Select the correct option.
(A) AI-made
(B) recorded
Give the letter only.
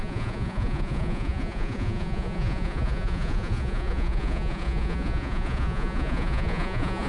A